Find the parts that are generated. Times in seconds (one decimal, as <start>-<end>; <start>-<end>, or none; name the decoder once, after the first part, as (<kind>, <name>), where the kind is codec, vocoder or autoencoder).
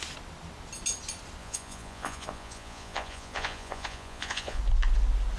1.4-4.6 (vocoder, Vocos)